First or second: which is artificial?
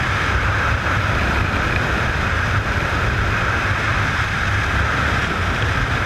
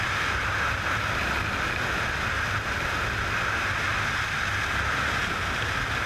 first